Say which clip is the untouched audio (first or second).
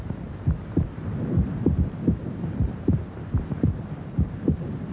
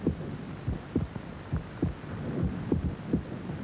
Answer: second